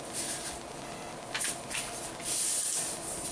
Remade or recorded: recorded